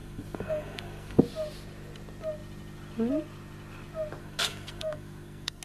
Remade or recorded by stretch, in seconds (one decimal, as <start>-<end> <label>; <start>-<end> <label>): 0.0-1.2 remade; 1.2-4.2 recorded; 4.2-5.6 remade

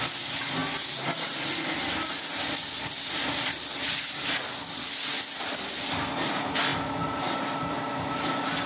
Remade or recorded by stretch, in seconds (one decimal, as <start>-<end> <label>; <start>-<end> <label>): 0.0-8.7 recorded

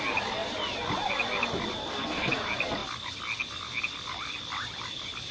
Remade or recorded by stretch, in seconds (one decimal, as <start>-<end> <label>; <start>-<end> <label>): 0.0-1.8 recorded; 1.8-2.3 remade; 2.3-5.3 recorded